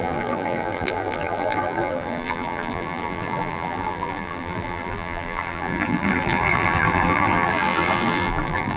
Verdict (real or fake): fake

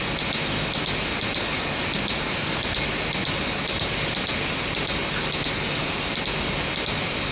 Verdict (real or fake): real